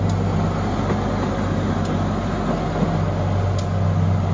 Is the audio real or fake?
real